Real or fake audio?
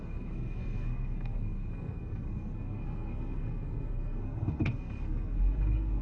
fake